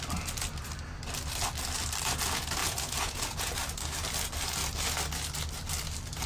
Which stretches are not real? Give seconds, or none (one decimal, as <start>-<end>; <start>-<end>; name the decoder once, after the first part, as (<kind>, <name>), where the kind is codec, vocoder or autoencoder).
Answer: 2.6-3.5 (vocoder, Vocos)